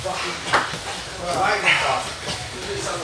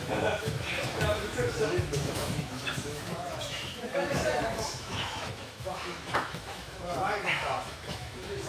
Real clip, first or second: first